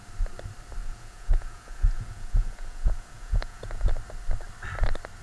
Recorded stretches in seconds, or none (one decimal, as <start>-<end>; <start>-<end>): 0.0-0.8; 3.9-5.2